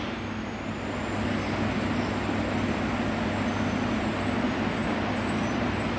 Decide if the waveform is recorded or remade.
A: recorded